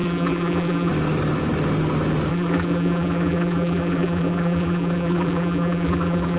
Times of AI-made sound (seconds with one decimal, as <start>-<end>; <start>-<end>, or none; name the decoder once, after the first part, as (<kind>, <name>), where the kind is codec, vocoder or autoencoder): 0.0-0.9 (vocoder, BigVGAN v2); 2.3-6.4